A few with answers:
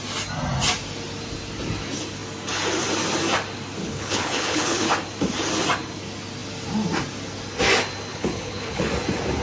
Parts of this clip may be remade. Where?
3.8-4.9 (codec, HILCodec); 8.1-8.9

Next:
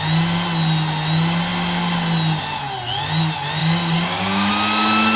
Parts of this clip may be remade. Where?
3.6-4.5 (codec, DAC)

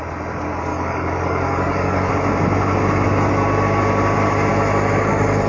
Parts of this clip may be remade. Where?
0.7-2.1 (codec, DAC)

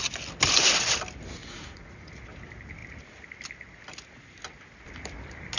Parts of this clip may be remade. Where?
1.4-2.1 (vocoder, Vocos)

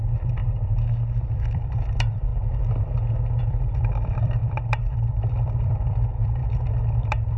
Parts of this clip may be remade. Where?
0.0-0.4 (vocoder, BigVGAN v2); 1.2-2.3; 3.4-6.4; 7.0-7.4

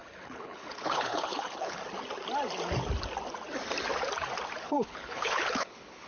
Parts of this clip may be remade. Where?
0.0-1.8 (codec, HILCodec); 4.6-6.1

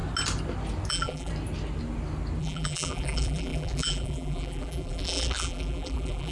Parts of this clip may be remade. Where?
0.9-1.3 (vocoder, BigVGAN v2); 2.4-6.3